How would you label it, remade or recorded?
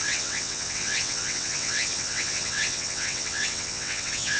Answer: remade